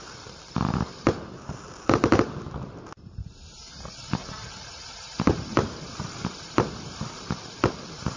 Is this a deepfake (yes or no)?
no